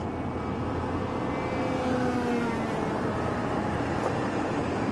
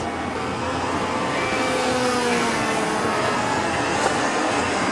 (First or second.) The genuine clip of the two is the first